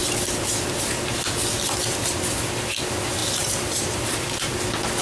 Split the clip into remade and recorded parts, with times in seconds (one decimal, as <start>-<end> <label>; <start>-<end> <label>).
0.0-5.0 recorded